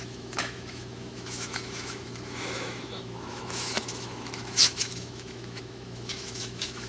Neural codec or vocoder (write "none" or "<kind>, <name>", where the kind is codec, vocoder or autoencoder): autoencoder, DAC-VAE